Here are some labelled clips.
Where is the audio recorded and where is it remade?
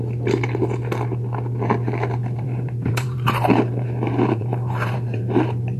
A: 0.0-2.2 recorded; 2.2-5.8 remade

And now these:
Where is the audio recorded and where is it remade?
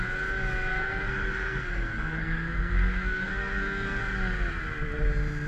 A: 0.0-0.7 recorded; 0.7-4.0 remade; 4.0-5.5 recorded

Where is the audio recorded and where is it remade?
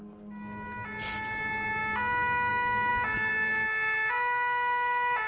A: 0.0-5.3 recorded